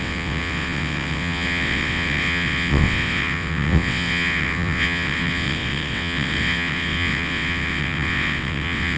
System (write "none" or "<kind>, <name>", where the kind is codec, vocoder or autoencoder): vocoder, WaveNeXt